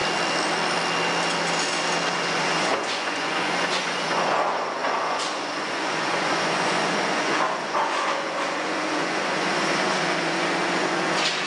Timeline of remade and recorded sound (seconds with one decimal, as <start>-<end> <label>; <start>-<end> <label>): 0.0-2.1 recorded; 2.1-11.5 remade